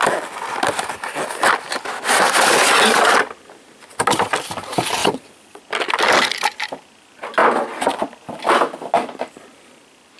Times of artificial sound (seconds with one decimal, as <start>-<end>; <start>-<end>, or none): 5.0-5.6